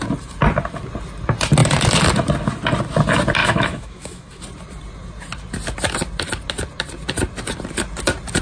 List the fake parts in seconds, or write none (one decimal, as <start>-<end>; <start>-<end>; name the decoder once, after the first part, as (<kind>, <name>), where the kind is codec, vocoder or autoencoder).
3.4-4.4 (autoencoder, DAC-VAE)